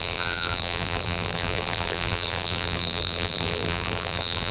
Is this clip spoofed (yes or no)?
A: yes